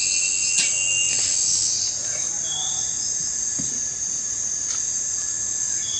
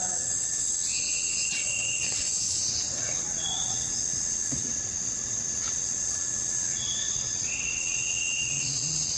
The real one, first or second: first